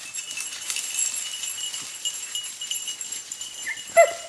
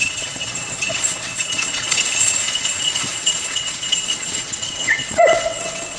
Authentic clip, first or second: first